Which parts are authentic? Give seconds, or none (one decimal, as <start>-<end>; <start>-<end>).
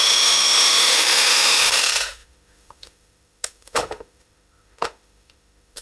none